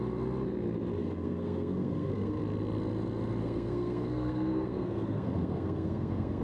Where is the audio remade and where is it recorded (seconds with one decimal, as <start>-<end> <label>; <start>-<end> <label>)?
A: 0.0-1.0 recorded; 1.0-2.4 remade; 2.4-3.4 recorded; 3.4-6.4 remade

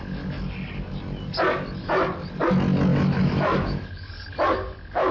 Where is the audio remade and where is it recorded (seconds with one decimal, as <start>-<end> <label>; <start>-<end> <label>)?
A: 0.0-2.9 recorded; 2.9-4.1 remade; 4.1-5.1 recorded

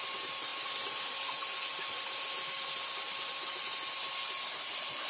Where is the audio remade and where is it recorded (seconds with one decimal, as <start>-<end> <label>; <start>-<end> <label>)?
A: 0.0-5.1 recorded

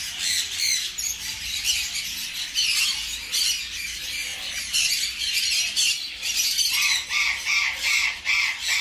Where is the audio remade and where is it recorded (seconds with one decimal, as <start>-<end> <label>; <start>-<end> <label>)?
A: 0.0-2.2 remade; 2.2-3.6 recorded; 3.6-4.3 remade; 4.3-5.4 recorded; 5.4-8.8 remade

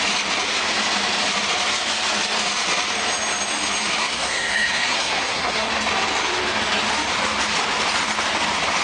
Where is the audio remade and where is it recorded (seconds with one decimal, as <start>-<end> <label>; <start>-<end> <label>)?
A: 0.0-4.0 recorded; 4.0-5.7 remade; 5.7-8.8 recorded

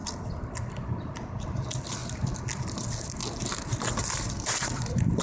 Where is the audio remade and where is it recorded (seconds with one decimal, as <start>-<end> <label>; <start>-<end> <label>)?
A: 0.0-3.2 remade; 3.2-4.0 recorded; 4.0-5.2 remade

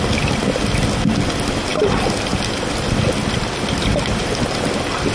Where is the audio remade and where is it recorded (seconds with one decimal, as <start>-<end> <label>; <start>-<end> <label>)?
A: 0.0-5.1 recorded